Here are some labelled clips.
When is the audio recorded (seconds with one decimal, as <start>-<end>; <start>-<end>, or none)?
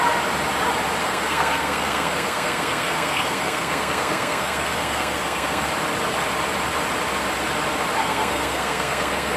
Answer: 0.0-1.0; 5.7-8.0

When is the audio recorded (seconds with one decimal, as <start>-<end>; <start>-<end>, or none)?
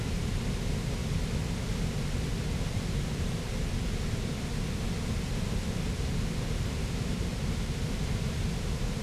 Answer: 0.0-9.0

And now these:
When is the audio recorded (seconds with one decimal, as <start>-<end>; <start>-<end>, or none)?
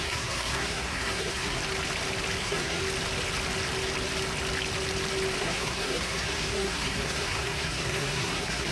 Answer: 1.6-2.4; 2.8-5.4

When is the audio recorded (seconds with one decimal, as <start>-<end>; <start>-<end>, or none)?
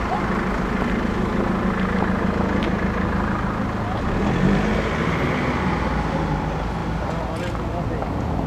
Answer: 0.0-8.5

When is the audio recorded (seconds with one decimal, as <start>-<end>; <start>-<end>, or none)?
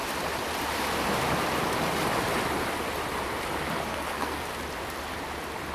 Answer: 0.0-3.9; 4.5-5.7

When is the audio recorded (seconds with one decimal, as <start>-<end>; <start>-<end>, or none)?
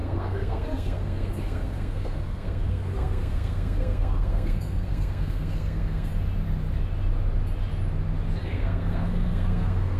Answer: 6.1-8.4